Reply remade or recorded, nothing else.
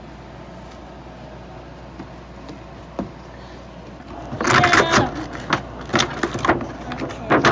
recorded